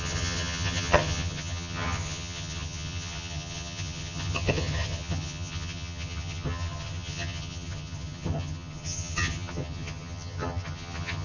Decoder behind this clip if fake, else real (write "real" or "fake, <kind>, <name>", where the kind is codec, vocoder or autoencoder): fake, vocoder, HiFi-GAN